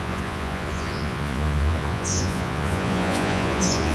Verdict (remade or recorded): remade